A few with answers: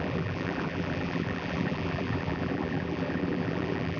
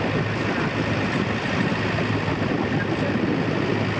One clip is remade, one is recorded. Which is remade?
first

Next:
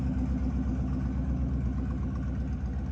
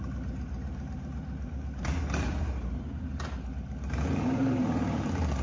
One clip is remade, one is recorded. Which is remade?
second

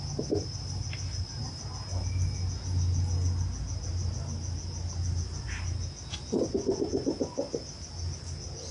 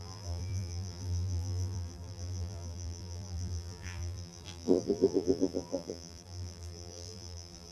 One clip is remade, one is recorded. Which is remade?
second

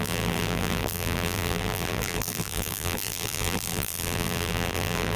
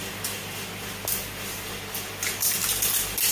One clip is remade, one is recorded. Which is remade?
first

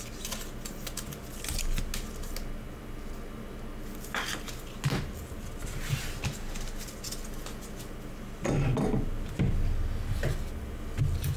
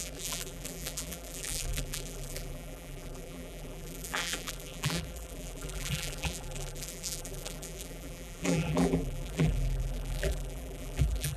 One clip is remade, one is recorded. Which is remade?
second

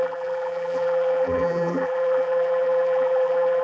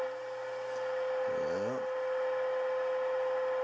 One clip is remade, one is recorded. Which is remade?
first